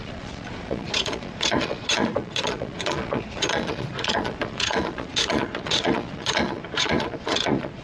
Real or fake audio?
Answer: fake